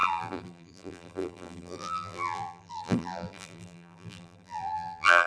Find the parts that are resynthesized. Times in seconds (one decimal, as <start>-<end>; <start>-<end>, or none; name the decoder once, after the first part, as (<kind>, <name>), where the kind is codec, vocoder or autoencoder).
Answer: 0.0-5.3 (vocoder, BigVGAN v2)